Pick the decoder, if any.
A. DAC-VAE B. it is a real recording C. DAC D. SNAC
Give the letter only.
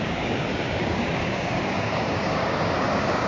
C